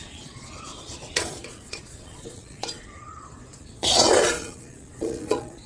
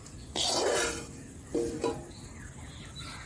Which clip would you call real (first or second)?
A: second